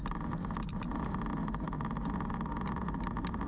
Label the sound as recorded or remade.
recorded